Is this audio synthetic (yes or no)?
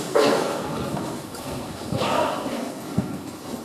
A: yes